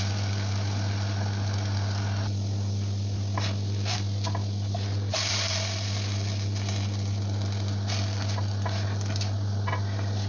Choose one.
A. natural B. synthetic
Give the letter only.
A